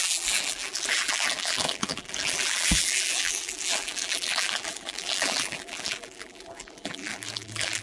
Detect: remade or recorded remade